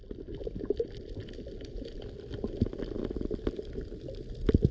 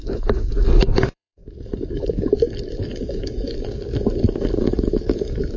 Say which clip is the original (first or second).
first